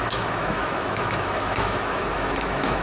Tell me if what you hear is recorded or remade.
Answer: remade